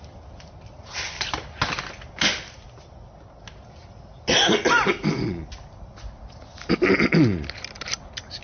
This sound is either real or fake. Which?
real